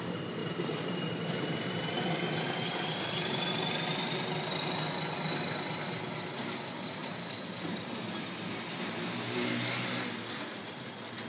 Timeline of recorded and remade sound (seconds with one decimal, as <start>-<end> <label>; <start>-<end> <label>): 0.0-0.4 recorded; 0.4-4.2 remade; 4.2-7.0 recorded; 7.0-9.5 remade; 9.5-11.3 recorded